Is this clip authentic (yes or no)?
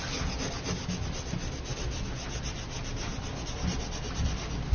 yes